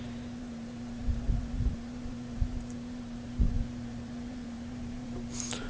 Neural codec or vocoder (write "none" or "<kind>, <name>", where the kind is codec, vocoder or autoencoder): vocoder, BigVGAN v2